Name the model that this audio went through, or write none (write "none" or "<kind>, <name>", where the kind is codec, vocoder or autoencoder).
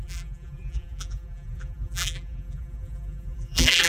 vocoder, BigVGAN v2